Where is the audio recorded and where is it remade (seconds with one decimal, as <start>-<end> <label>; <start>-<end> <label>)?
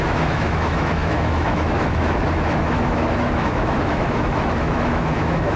0.0-5.6 remade